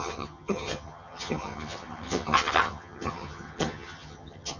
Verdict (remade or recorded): remade